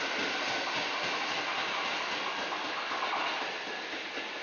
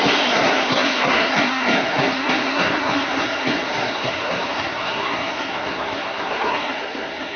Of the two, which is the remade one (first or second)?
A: second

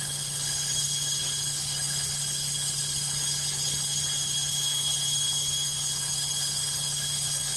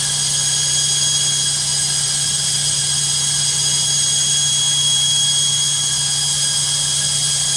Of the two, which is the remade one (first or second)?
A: first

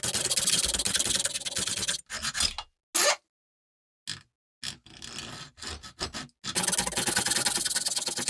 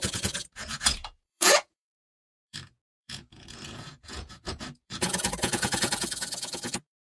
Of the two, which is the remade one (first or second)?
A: second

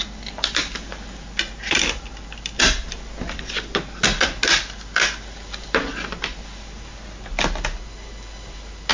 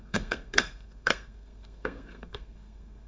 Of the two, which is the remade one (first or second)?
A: second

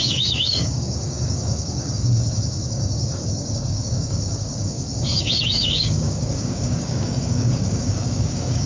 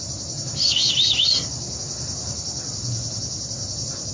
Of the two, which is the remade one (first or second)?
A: first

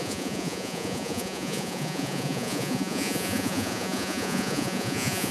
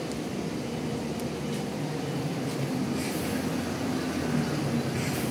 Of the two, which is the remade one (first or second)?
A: first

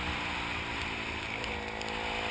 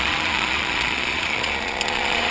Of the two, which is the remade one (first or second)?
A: second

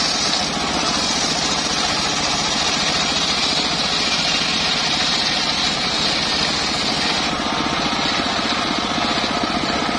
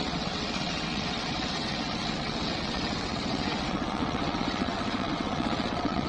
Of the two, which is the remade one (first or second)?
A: second